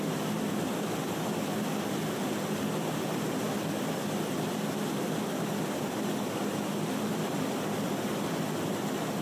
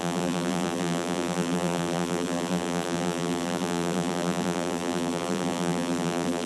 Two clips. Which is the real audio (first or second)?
first